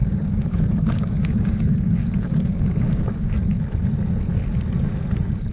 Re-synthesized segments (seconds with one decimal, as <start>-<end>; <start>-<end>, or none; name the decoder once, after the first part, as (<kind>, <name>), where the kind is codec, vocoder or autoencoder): 0.0-3.3 (codec, DAC)